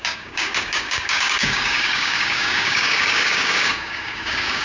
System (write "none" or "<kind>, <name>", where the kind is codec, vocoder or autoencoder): codec, DAC